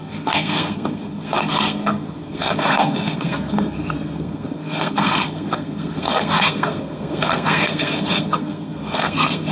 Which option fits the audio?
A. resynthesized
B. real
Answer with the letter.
A